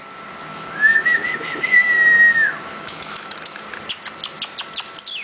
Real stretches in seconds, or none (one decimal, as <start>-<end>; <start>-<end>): 0.0-0.5; 3.6-5.2